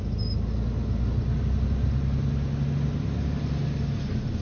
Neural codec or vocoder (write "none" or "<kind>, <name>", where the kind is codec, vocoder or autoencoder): none